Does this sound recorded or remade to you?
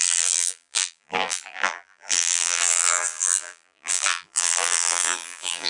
remade